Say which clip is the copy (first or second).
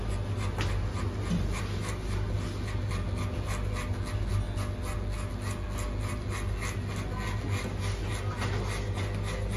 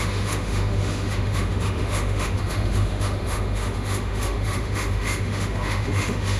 second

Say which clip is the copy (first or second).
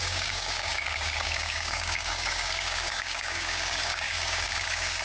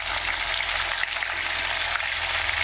first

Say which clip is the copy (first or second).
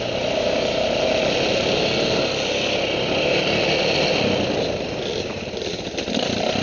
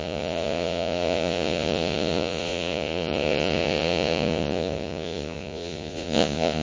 second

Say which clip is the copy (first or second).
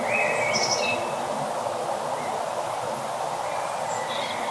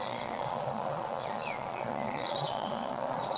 second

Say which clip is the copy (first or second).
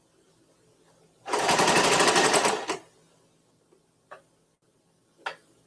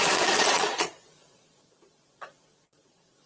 second